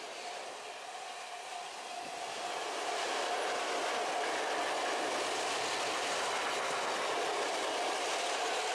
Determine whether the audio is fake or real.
real